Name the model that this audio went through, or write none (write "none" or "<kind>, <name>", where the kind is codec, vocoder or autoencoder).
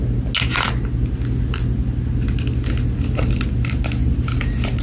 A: none